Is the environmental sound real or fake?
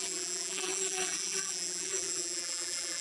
fake